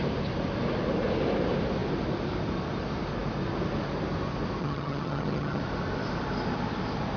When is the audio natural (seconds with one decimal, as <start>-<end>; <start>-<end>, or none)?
0.0-4.6; 5.6-7.2